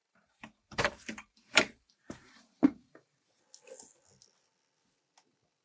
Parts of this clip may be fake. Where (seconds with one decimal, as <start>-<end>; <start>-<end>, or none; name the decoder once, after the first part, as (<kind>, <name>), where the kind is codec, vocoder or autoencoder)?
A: 0.0-3.4 (vocoder, BigVGAN v2)